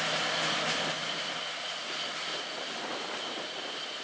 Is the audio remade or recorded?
recorded